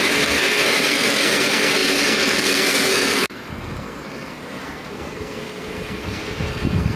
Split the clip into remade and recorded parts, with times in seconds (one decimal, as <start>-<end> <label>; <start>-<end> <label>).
0.0-7.0 remade